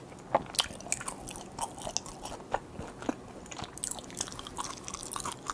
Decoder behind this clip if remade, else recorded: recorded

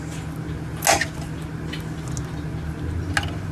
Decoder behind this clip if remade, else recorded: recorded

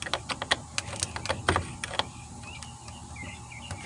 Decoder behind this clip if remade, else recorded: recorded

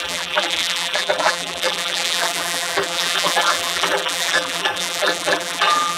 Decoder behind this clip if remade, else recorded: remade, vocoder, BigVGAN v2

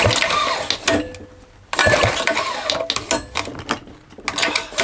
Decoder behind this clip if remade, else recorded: recorded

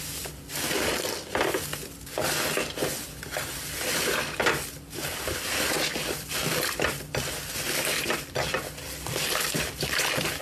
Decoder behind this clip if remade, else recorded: recorded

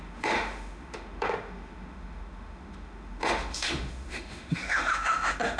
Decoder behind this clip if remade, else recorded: remade, autoencoder, DAC-VAE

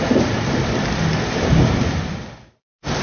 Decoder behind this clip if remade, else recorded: recorded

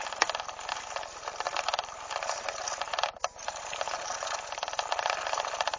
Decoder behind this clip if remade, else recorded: remade, vocoder, BigVGAN v2